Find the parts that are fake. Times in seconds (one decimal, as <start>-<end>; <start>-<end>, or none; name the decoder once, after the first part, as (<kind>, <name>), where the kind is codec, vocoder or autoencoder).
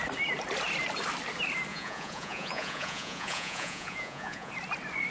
1.7-4.5 (vocoder, Vocos)